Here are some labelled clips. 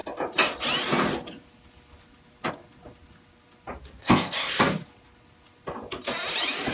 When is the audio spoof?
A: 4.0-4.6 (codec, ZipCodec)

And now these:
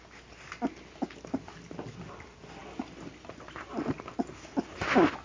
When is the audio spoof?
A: none

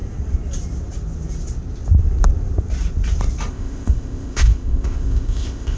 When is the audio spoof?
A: 3.5-5.8 (codec, ZipCodec)

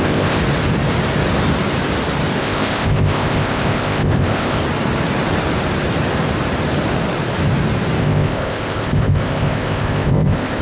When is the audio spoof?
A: 0.0-0.4 (codec, ZipCodec); 2.4-4.6; 8.0-10.6